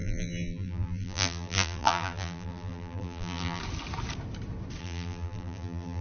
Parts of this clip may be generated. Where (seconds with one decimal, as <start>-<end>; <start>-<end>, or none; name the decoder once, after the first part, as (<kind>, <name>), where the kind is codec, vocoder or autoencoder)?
0.0-3.6 (vocoder, BigVGAN v2); 4.8-6.0